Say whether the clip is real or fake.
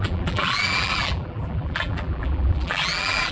fake